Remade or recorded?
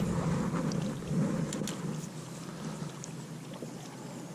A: recorded